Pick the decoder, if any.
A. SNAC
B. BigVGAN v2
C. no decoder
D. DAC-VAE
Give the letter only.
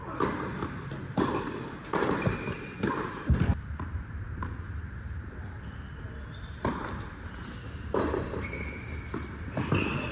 C